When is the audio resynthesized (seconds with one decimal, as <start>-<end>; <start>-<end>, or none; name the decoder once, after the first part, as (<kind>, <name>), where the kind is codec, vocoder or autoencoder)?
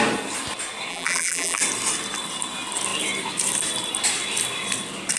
0.9-1.6 (vocoder, BigVGAN v2)